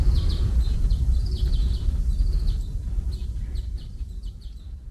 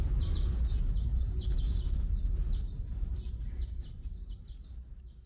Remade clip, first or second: first